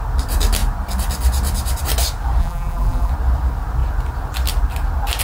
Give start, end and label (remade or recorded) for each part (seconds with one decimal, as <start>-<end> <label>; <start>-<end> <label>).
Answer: 0.0-2.4 recorded; 2.4-3.1 remade; 3.1-5.2 recorded